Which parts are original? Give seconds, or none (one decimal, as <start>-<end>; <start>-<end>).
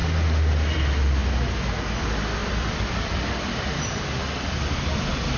0.0-0.7; 1.2-2.0